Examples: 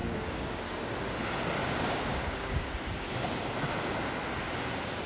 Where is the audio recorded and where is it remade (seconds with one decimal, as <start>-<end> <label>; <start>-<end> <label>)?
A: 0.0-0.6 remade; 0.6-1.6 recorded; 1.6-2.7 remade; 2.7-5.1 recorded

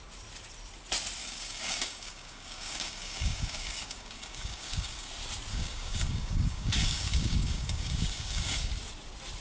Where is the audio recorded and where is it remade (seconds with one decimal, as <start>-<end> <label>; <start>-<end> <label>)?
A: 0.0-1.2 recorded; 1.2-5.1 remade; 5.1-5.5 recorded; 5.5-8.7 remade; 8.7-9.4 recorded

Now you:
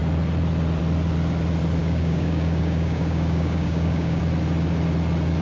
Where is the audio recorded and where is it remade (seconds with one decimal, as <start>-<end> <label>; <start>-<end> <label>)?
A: 0.0-1.8 recorded; 1.8-4.2 remade; 4.2-5.4 recorded

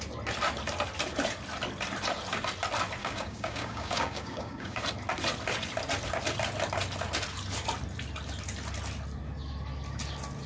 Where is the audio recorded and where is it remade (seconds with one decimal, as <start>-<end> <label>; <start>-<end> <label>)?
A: 0.0-3.0 recorded; 3.0-4.8 remade; 4.8-10.5 recorded

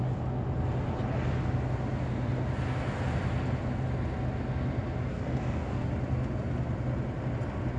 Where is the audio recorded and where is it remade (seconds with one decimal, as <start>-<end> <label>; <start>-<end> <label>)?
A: 0.0-5.1 recorded; 5.1-5.9 remade; 5.9-7.8 recorded

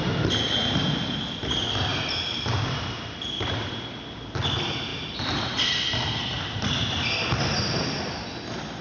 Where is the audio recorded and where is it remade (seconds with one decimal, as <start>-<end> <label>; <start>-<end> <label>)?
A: 0.0-8.8 recorded

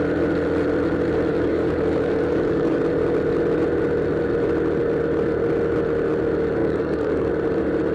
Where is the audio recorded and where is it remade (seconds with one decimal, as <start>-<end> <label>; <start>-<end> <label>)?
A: 0.0-1.3 recorded; 1.3-2.8 remade; 2.8-6.6 recorded; 6.6-7.3 remade; 7.3-7.9 recorded